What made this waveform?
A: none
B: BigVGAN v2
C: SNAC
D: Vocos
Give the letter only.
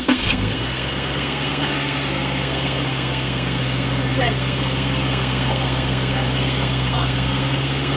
C